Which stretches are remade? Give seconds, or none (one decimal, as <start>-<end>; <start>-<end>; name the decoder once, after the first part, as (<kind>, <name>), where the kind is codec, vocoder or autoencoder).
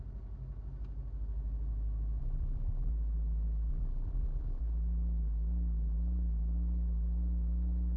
2.2-2.9 (vocoder, BigVGAN v2); 3.7-4.6